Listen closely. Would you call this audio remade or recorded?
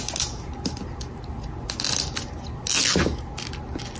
recorded